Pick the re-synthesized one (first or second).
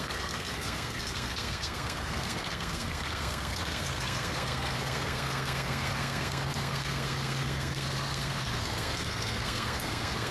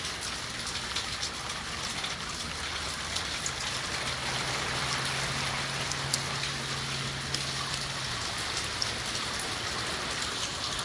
first